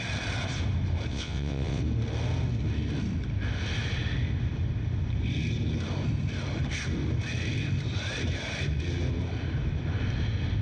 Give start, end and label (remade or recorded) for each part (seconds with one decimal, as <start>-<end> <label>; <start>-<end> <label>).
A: 0.0-1.1 recorded; 1.1-1.8 remade; 1.8-10.6 recorded